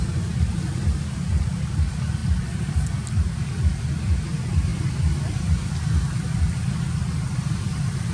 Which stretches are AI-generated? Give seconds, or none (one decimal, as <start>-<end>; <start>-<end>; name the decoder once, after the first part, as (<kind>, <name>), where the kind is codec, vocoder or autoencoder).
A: 2.2-3.1 (vocoder, BigVGAN v2)